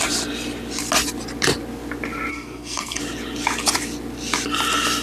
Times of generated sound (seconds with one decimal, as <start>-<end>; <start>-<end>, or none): 2.3-3.0